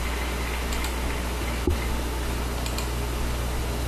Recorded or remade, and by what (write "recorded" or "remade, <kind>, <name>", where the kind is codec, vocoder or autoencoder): recorded